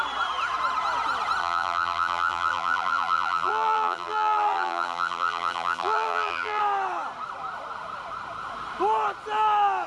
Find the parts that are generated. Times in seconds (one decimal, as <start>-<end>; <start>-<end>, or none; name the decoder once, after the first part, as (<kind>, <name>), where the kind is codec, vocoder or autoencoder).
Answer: 1.4-6.6 (vocoder, BigVGAN v2)